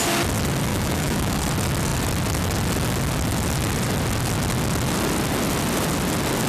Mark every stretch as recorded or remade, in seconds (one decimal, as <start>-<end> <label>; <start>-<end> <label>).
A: 0.0-0.7 recorded; 0.7-1.4 remade; 1.4-6.5 recorded